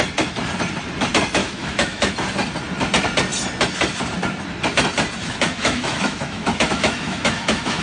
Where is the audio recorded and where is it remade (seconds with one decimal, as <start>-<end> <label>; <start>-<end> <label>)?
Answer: 0.0-1.4 recorded; 1.4-2.1 remade; 2.1-5.2 recorded; 5.2-7.8 remade